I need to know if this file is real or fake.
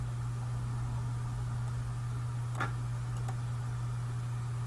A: real